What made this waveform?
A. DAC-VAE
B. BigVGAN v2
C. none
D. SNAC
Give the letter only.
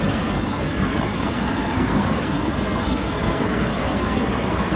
D